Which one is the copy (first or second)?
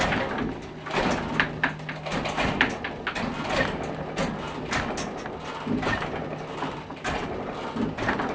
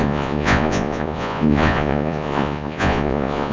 second